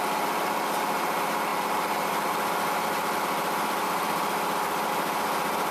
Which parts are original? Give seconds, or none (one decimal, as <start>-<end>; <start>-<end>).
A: none